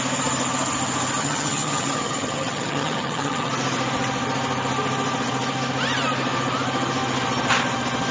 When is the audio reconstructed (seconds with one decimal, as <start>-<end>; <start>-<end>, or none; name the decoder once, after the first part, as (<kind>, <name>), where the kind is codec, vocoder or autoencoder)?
1.2-3.5 (vocoder, HiFi-GAN)